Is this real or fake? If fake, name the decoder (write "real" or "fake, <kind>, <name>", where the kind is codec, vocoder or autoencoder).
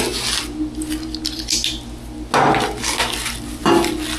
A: real